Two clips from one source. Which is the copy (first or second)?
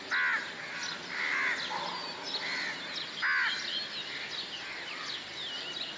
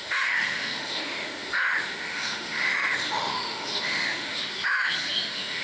second